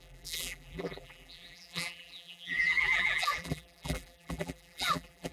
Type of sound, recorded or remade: remade